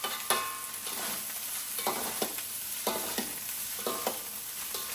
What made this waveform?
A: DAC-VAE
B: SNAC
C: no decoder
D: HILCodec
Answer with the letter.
C